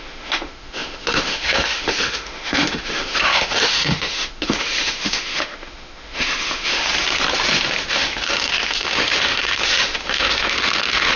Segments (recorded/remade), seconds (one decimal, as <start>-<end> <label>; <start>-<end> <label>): 0.0-6.9 remade; 6.9-7.9 recorded; 7.9-11.2 remade